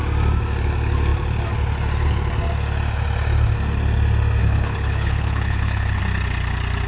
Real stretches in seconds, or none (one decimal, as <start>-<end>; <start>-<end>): 0.0-4.4; 6.0-6.9